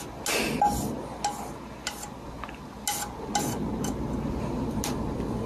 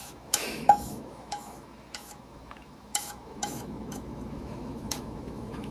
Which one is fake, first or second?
second